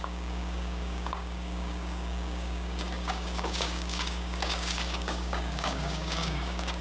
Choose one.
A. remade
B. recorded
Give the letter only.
A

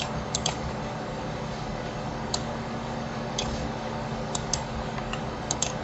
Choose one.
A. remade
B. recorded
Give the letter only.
A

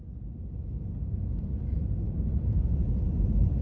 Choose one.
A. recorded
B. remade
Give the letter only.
A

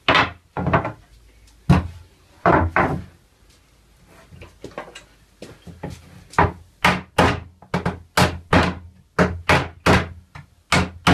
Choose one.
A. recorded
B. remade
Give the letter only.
A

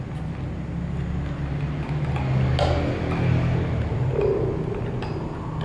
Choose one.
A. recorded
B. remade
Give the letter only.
A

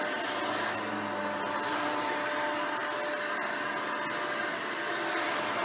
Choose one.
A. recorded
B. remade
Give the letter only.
A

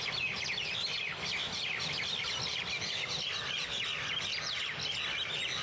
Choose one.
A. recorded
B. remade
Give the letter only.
A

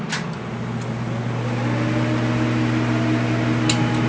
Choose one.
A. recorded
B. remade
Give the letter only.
A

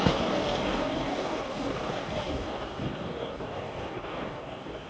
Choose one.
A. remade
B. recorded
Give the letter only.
A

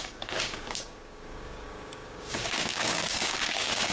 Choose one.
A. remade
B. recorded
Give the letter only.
A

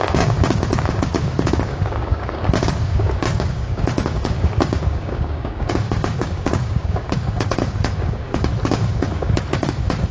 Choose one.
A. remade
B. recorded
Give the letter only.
A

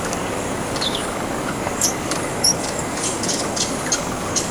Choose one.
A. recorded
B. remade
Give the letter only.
B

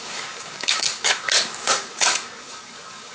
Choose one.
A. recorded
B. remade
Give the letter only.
B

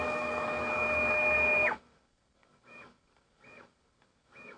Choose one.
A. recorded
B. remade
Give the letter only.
B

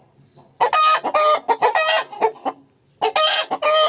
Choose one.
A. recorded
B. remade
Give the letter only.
A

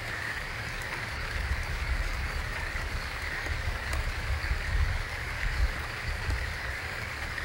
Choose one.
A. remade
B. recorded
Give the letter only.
A